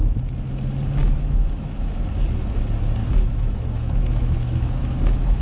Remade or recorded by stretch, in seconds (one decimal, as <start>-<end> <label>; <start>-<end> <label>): 0.0-1.0 recorded; 1.0-2.0 remade; 2.0-3.0 recorded; 3.0-5.4 remade